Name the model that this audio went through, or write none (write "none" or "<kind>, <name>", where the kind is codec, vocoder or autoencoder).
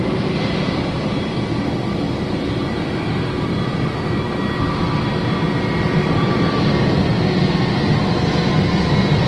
none